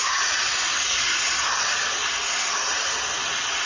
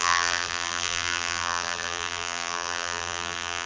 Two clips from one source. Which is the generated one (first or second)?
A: second